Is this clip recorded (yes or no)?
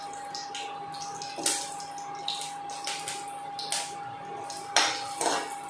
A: yes